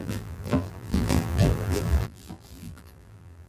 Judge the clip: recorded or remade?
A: remade